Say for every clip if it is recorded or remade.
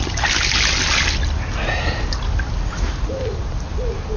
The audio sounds recorded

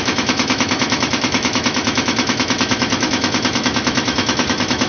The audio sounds remade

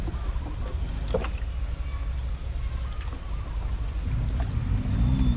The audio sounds recorded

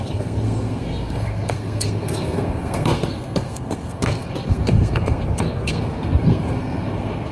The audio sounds remade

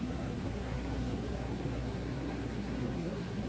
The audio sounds remade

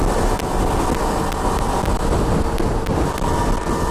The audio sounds recorded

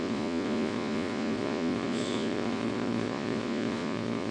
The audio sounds remade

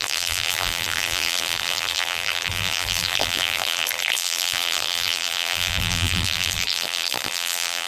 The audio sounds remade